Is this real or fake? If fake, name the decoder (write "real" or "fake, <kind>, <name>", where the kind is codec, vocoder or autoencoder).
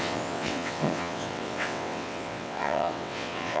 fake, vocoder, WaveNeXt